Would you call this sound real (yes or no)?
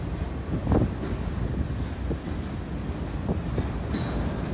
yes